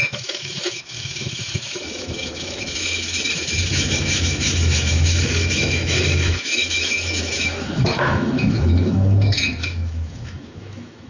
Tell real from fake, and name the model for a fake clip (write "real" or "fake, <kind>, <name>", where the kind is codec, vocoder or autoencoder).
fake, autoencoder, DAC-VAE